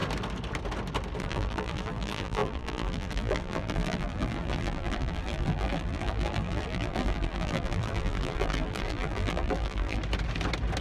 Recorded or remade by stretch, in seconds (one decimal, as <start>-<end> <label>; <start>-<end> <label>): 0.0-1.2 recorded; 1.2-10.0 remade; 10.0-10.8 recorded